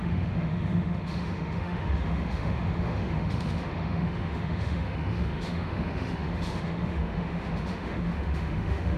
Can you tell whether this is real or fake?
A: fake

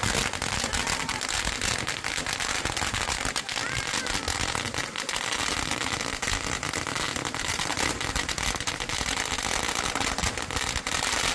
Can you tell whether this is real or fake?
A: real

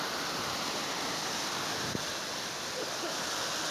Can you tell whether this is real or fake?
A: real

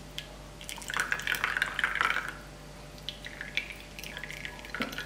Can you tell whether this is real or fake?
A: real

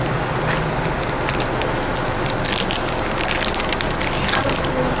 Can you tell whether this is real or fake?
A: real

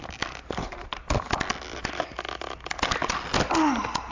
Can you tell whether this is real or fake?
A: real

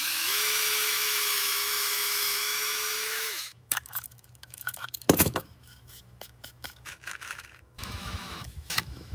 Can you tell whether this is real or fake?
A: fake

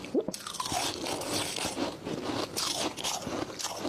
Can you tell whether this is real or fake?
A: real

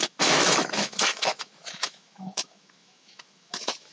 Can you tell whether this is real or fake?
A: fake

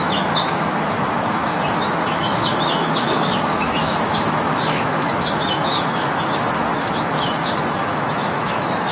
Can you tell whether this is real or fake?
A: fake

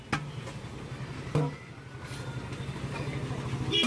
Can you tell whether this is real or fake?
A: real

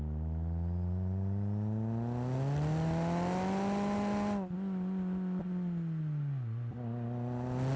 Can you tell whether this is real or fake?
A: real